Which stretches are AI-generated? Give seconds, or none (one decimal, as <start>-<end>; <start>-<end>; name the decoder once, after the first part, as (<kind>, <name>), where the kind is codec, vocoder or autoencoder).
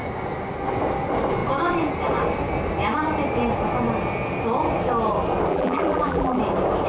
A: 5.5-6.4 (vocoder, BigVGAN v2)